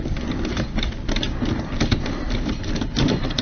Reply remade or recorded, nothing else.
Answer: recorded